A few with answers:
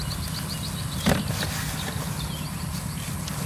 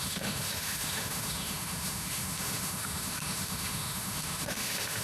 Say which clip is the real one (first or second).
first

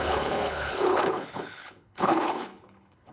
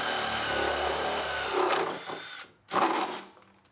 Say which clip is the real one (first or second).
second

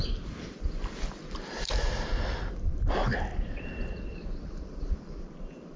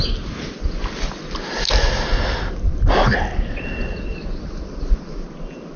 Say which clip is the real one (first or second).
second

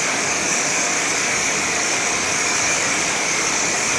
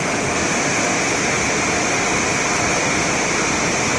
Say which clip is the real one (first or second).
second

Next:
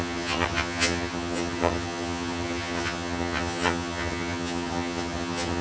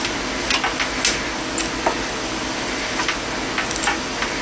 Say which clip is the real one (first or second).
second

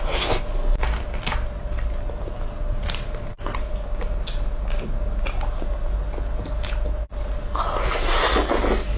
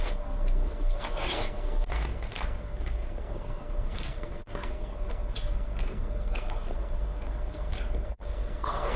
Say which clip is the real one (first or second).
first